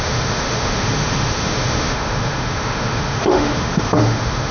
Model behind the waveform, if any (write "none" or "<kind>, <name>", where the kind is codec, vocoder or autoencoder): autoencoder, DAC-VAE